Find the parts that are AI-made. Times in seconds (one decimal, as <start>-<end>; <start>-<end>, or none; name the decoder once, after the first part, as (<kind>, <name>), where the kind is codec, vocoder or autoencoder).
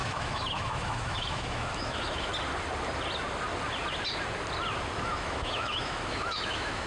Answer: 0.0-2.3 (autoencoder, DAC-VAE); 5.0-6.9